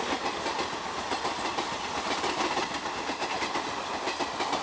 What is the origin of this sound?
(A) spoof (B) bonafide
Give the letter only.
B